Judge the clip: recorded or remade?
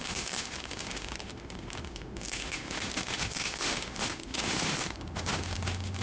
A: remade